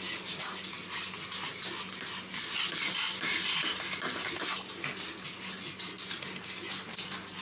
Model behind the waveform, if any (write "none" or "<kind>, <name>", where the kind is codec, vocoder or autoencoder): none